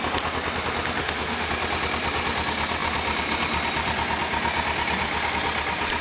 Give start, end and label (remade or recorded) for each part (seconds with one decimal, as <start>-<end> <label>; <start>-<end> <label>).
0.0-1.0 recorded; 1.0-1.5 remade; 1.5-6.0 recorded